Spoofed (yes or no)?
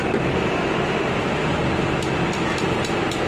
no